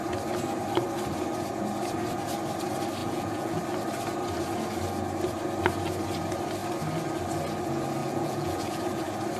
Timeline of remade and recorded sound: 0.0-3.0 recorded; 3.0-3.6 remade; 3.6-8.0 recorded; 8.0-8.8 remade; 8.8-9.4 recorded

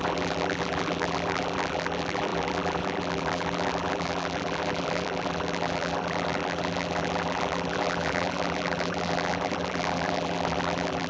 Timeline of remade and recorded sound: 0.0-11.1 remade

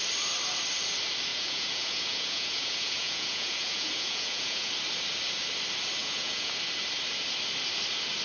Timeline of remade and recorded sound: 0.0-1.3 recorded; 1.3-4.7 remade; 4.7-6.0 recorded; 6.0-6.6 remade; 6.6-8.2 recorded

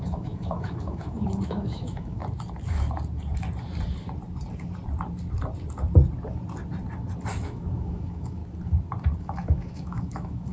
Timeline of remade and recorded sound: 0.0-2.2 remade; 2.2-7.3 recorded; 7.3-8.4 remade; 8.4-9.2 recorded; 9.2-10.5 remade